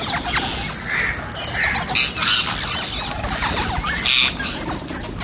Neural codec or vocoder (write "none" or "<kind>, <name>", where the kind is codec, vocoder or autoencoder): none